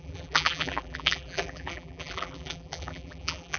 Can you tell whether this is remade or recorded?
remade